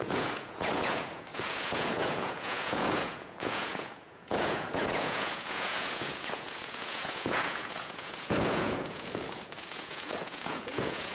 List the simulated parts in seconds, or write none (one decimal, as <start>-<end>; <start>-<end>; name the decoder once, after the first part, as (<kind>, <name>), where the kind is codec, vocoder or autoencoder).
0.0-11.1 (vocoder, Vocos)